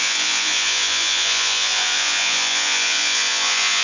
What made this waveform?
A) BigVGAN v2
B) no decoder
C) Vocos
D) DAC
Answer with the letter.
C